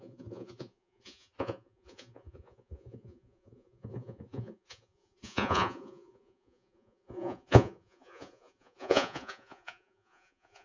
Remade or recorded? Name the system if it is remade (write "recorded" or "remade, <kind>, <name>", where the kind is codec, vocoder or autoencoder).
remade, vocoder, Vocos